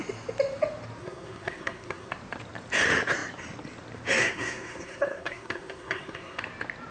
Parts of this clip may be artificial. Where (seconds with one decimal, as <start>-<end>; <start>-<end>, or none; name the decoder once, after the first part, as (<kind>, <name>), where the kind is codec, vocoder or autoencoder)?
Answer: 1.0-2.1 (codec, SNAC); 4.2-6.4